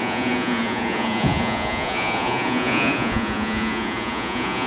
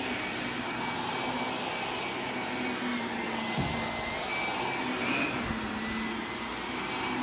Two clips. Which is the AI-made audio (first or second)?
first